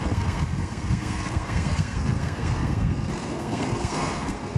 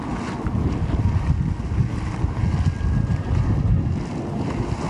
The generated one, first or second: first